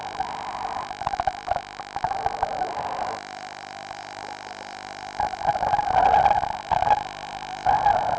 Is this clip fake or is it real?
real